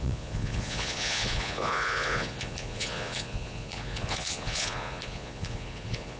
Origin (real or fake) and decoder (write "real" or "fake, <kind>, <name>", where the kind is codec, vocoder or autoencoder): fake, vocoder, Vocos